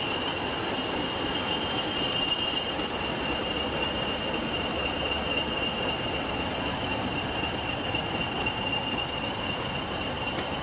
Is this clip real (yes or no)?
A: yes